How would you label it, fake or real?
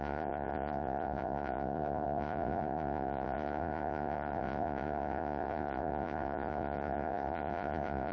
fake